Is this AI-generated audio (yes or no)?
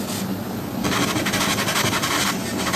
no